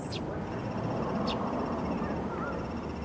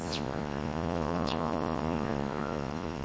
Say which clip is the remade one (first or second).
second